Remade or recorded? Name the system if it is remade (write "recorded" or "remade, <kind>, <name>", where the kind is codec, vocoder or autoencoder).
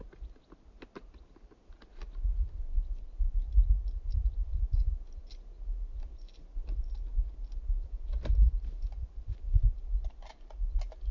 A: recorded